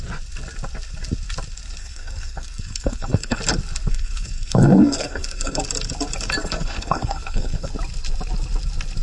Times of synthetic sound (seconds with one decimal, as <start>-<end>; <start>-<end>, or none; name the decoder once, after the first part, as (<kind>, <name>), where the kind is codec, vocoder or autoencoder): 1.8-3.4 (codec, SNAC); 3.9-5.6; 6.4-7.7